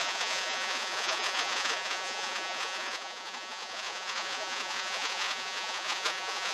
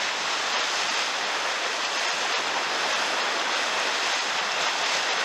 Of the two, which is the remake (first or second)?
first